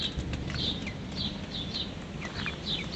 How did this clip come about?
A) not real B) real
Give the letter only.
B